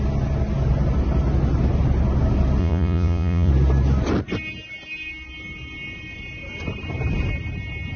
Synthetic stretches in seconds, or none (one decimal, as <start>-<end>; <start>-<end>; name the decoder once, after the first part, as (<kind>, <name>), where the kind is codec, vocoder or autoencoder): 2.6-3.5 (vocoder, Vocos)